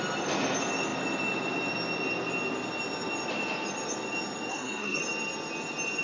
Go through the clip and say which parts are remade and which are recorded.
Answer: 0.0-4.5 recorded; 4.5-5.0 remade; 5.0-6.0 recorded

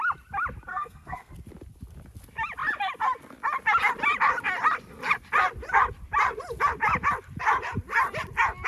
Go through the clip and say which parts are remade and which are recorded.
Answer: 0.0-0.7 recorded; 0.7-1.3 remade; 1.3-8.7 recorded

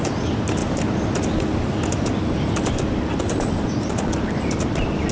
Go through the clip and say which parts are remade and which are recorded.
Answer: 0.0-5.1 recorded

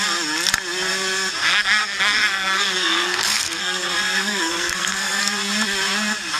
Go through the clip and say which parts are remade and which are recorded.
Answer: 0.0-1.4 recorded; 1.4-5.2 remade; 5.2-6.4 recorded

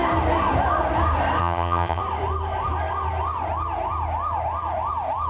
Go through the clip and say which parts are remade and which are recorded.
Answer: 0.0-1.4 recorded; 1.4-2.0 remade; 2.0-5.3 recorded

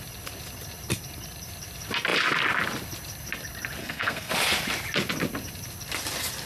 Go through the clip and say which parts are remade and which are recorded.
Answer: 0.0-3.8 recorded; 3.8-4.3 remade; 4.3-6.5 recorded

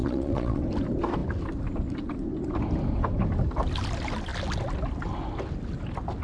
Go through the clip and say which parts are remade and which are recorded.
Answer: 0.0-0.6 remade; 0.6-6.2 recorded